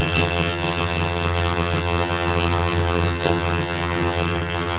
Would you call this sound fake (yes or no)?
yes